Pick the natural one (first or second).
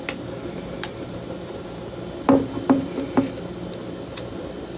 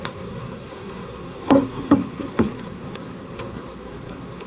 first